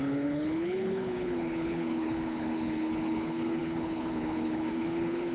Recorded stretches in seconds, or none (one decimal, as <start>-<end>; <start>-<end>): none